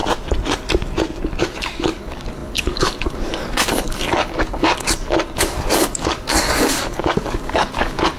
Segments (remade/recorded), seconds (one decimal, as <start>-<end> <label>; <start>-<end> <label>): 0.0-1.4 recorded; 1.4-8.2 remade